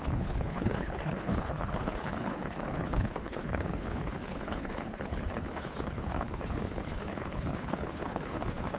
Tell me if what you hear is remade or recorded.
remade